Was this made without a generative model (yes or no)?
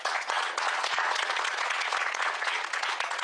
no